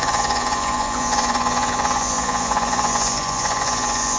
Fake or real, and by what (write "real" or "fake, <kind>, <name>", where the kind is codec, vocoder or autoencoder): fake, vocoder, Vocos